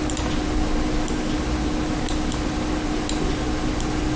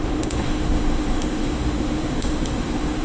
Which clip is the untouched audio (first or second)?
first